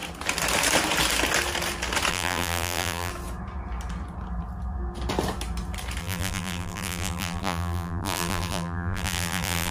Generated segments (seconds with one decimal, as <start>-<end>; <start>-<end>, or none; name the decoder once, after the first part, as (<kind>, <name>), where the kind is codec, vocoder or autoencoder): 2.1-3.1 (vocoder, BigVGAN v2); 6.0-9.7